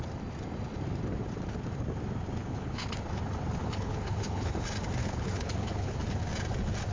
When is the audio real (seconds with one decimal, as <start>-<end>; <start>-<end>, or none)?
0.0-2.4; 3.0-3.6; 4.6-5.0; 6.2-6.9